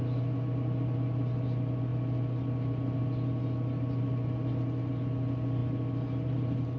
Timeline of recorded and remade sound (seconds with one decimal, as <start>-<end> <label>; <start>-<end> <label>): 0.0-6.8 recorded